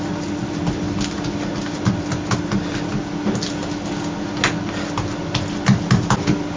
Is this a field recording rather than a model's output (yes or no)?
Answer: yes